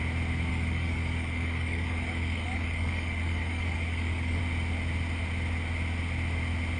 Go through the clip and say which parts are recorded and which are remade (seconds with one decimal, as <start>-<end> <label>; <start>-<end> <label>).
0.0-0.5 recorded; 0.5-4.4 remade; 4.4-6.8 recorded